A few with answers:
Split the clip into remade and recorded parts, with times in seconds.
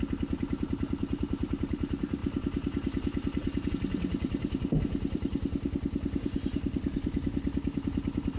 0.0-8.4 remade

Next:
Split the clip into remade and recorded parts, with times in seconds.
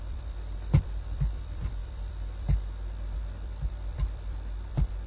0.0-5.1 remade